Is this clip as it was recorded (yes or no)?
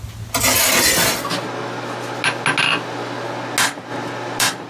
yes